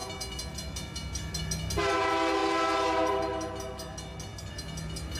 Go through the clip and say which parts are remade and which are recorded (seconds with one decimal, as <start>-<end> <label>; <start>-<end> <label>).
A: 0.0-5.2 recorded

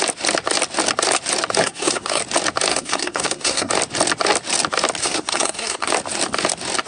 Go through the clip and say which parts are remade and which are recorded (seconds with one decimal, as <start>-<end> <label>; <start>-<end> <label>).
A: 0.0-1.6 recorded; 1.6-2.2 remade; 2.2-2.7 recorded; 2.7-3.7 remade; 3.7-5.0 recorded; 5.0-5.9 remade; 5.9-6.9 recorded

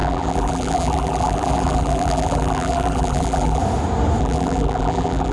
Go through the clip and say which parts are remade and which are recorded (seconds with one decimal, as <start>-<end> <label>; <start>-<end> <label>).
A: 0.0-3.6 remade; 3.6-4.2 recorded; 4.2-5.3 remade